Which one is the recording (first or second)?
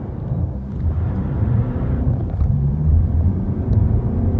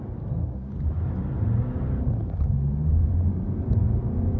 second